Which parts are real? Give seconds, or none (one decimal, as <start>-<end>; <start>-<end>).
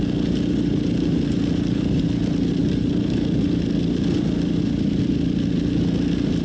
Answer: 0.0-6.4